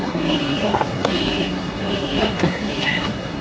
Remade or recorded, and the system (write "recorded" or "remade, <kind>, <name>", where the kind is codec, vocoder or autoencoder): remade, codec, SNAC